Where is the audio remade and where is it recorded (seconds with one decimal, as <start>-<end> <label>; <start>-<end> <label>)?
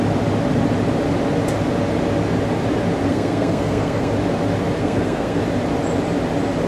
0.0-3.1 recorded; 3.1-4.1 remade; 4.1-4.8 recorded; 4.8-5.4 remade; 5.4-6.7 recorded